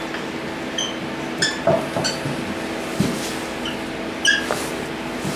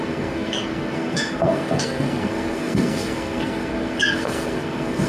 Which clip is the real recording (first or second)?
first